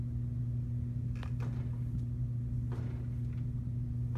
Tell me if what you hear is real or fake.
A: real